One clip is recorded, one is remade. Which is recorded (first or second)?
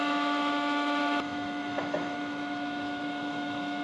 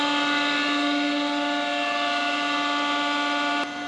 second